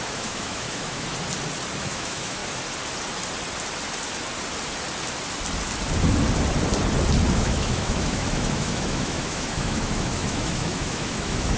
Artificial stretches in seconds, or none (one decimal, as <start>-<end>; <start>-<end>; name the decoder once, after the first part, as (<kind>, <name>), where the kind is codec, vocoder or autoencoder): 0.0-1.1 (autoencoder, DAC-VAE); 1.8-2.4; 7.3-11.6